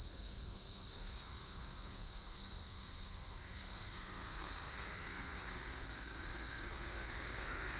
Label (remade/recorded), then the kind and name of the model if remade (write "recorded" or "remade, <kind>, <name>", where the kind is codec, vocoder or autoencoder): remade, codec, SNAC